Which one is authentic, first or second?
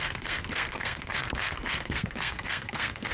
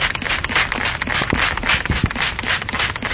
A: second